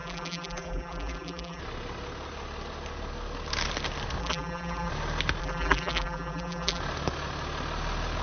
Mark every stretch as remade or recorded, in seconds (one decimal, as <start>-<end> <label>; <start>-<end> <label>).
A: 0.0-1.6 remade; 1.6-4.2 recorded; 4.2-4.9 remade; 4.9-5.4 recorded; 5.4-6.8 remade; 6.8-8.2 recorded